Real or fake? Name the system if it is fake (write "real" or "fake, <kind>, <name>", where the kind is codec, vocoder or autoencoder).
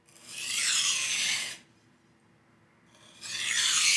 real